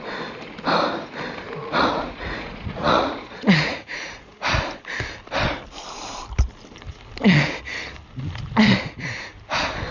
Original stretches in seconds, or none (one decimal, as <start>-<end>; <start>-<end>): 0.0-1.7; 4.5-9.9